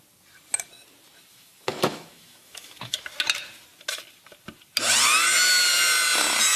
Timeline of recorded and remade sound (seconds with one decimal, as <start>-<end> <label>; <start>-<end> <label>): 0.0-1.3 recorded; 1.3-3.0 remade; 3.0-6.6 recorded